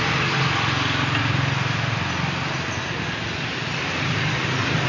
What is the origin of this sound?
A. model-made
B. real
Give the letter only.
B